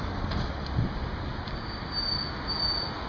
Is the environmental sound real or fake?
real